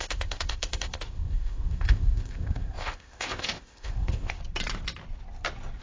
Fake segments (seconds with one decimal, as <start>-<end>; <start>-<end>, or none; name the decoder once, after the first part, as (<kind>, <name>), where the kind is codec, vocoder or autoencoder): 0.0-4.4 (codec, ZipCodec)